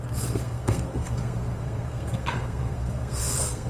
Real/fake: fake